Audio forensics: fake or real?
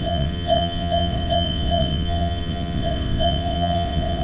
fake